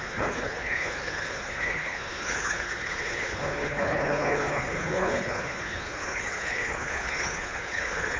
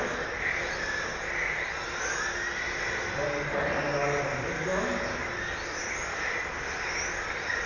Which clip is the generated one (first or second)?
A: first